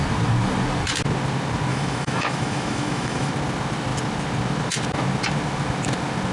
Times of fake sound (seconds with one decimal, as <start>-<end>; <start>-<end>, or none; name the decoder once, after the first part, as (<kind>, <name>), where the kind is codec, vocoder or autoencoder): 1.7-3.3 (autoencoder, DAC-VAE)